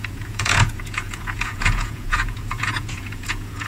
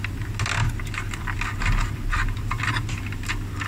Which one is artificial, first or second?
first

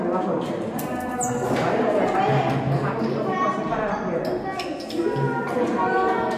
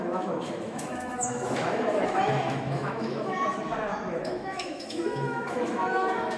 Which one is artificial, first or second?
second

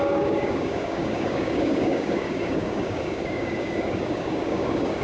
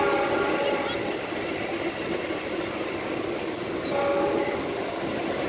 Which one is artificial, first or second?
first